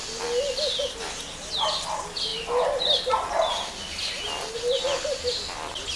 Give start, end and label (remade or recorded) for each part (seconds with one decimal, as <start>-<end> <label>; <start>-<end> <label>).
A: 0.0-6.0 recorded